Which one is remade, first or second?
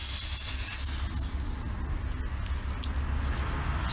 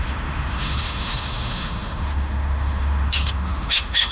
second